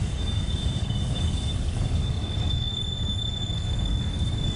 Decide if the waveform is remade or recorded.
remade